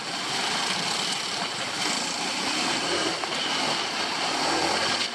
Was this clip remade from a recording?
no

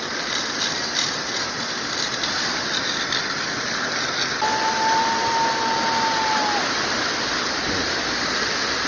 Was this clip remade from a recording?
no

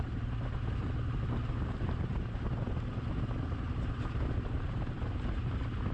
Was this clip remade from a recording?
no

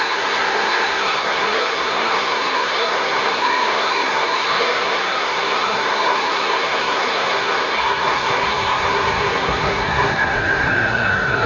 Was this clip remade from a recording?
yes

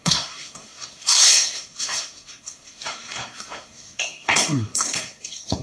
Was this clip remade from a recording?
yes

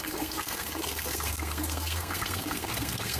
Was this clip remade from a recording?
yes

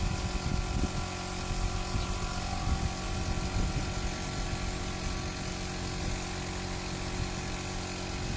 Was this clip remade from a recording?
no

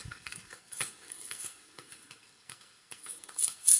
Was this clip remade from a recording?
yes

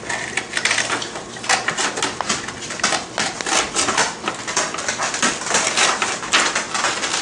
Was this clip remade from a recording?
no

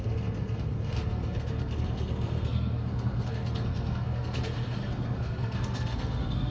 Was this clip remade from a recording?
yes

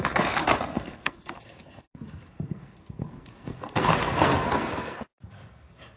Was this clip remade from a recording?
yes